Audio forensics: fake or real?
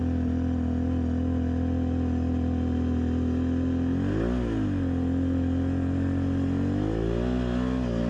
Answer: real